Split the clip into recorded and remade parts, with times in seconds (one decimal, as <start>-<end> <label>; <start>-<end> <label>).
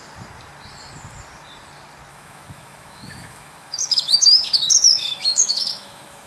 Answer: 0.0-2.1 recorded; 2.1-6.3 remade